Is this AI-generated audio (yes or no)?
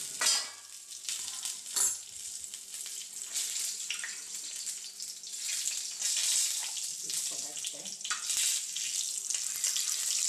no